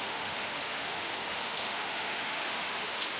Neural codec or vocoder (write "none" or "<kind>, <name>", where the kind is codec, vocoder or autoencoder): autoencoder, DAC-VAE